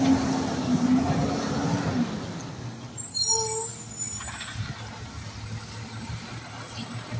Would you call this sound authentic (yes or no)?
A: yes